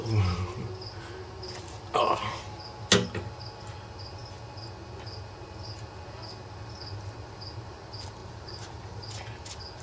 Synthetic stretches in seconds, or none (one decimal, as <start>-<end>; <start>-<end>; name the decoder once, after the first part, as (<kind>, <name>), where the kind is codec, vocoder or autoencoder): 8.2-9.1 (vocoder, BigVGAN v2)